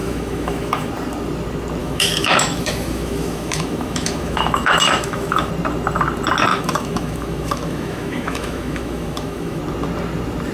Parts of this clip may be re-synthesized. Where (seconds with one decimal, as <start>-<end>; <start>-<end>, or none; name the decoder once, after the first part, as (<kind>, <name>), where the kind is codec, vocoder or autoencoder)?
0.0-0.9 (autoencoder, DAC-VAE); 1.8-5.5; 6.5-9.6